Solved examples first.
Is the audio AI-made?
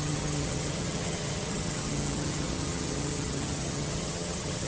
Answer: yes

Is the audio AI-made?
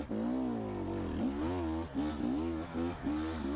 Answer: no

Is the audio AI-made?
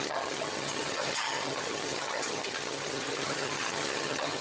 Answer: yes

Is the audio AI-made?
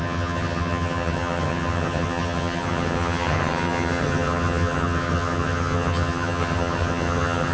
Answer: yes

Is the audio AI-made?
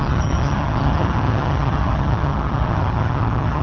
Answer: yes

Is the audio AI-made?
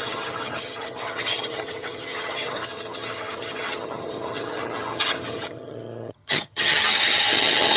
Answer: yes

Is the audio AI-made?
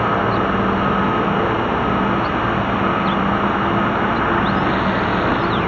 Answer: no